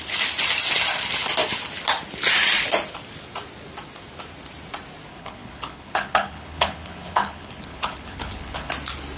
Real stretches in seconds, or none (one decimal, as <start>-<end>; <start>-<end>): 0.0-5.1; 8.7-9.2